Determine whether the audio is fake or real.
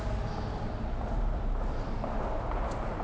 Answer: real